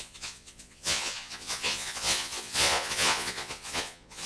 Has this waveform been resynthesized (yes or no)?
yes